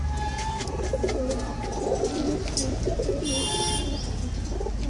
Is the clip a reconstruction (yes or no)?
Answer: no